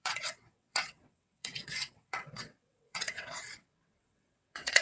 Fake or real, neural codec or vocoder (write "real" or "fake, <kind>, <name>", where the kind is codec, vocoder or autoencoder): fake, vocoder, WaveNeXt